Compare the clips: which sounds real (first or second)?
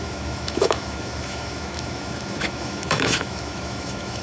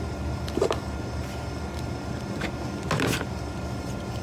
second